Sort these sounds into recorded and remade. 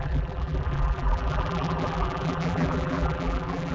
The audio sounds remade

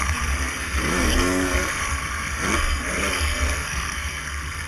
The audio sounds remade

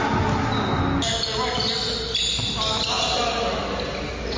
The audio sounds recorded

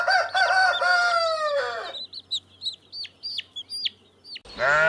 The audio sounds recorded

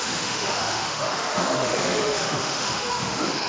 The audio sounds remade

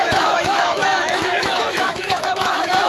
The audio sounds remade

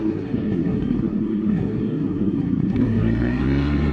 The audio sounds remade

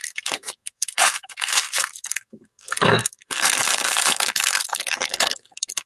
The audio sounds remade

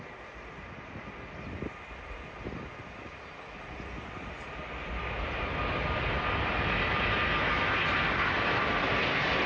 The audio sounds recorded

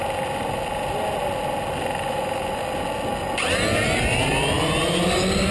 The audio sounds recorded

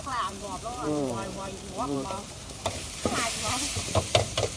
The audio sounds remade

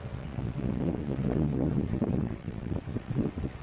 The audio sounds remade